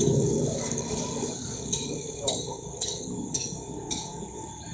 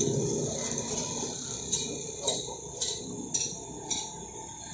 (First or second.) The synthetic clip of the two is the first